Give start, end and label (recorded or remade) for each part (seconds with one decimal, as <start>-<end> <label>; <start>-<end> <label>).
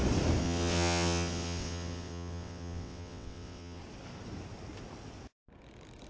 0.0-0.4 recorded; 0.4-3.8 remade; 3.8-6.1 recorded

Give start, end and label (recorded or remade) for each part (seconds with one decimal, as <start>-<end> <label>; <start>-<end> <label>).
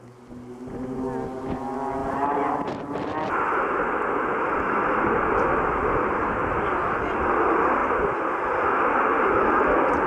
0.0-2.0 recorded; 2.0-2.6 remade; 2.6-10.1 recorded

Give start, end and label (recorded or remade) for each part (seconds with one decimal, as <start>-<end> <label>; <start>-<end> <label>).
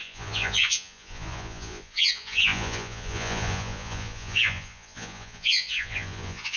0.0-6.6 remade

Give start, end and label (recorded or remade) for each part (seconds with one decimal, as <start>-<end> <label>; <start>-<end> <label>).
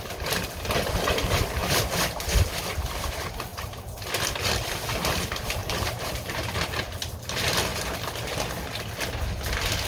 0.0-3.5 recorded; 3.5-4.0 remade; 4.0-5.6 recorded; 5.6-6.4 remade; 6.4-9.9 recorded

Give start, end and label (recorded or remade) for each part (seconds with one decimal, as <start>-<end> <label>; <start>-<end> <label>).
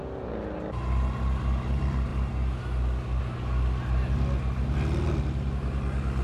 0.0-6.2 recorded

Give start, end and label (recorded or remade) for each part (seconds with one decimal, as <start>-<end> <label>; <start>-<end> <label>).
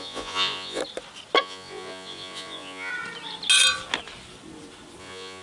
0.0-0.8 remade; 0.8-1.4 recorded; 1.4-2.9 remade; 2.9-5.0 recorded; 5.0-5.4 remade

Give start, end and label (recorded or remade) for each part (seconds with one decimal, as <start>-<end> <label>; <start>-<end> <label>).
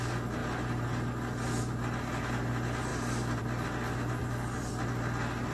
0.0-5.5 recorded